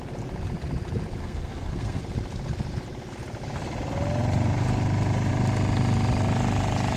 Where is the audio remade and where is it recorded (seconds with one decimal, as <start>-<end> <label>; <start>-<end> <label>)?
0.0-1.2 recorded; 1.2-2.0 remade; 2.0-7.0 recorded